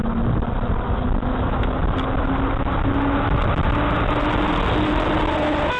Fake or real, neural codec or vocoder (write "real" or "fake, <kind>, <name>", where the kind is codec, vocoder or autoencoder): real